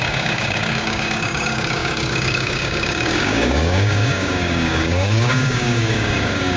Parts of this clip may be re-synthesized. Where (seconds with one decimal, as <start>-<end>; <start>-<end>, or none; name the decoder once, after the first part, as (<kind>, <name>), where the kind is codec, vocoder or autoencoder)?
0.0-6.6 (codec, DAC)